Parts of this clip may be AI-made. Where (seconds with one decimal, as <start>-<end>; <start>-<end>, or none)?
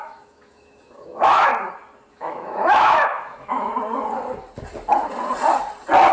0.0-1.5; 2.1-3.7